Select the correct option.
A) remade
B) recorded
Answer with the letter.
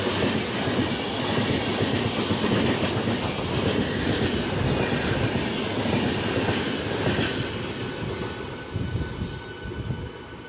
B